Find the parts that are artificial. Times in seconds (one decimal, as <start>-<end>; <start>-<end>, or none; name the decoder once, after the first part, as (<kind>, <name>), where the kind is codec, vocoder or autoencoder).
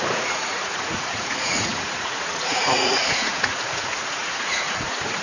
0.0-5.2 (vocoder, Vocos)